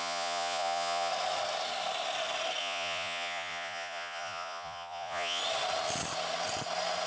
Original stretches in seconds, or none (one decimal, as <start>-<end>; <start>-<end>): 1.1-2.6; 5.4-7.1